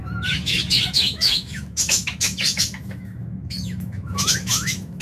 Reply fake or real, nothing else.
fake